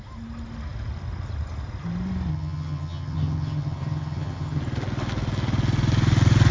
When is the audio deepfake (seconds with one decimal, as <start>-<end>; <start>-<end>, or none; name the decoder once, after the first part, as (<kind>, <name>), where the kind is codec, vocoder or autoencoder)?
2.3-4.6 (vocoder, HiFi-GAN)